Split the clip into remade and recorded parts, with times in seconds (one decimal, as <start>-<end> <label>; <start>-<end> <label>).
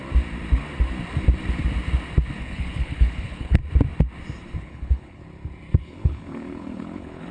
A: 0.0-2.4 recorded; 2.4-3.6 remade; 3.6-4.6 recorded; 4.6-5.2 remade; 5.2-5.8 recorded; 5.8-7.3 remade